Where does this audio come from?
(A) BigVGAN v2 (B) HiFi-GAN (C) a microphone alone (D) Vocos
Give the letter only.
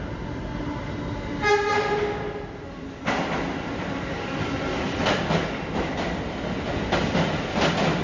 C